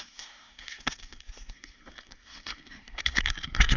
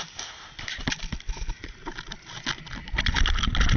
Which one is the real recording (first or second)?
second